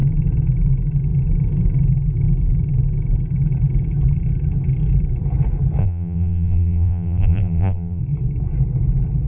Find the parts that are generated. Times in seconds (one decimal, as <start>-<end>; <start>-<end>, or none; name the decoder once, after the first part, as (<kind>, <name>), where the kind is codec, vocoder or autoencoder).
5.8-8.0 (vocoder, BigVGAN v2)